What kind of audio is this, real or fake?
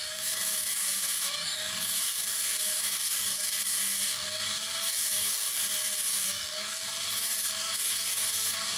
fake